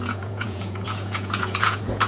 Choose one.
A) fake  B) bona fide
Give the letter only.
A